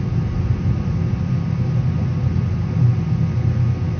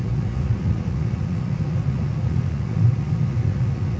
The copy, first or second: second